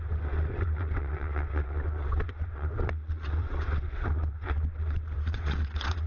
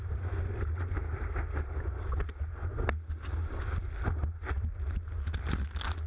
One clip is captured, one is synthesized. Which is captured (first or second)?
second